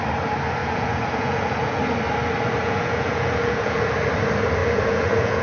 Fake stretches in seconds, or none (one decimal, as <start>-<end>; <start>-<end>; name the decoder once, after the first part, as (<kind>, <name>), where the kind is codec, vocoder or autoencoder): 0.6-1.8 (vocoder, Vocos); 2.6-3.9; 4.6-5.4